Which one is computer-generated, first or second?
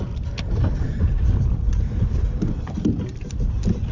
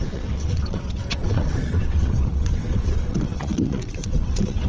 second